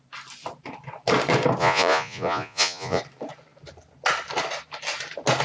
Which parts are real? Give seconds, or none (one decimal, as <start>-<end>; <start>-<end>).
0.0-1.6; 3.0-5.4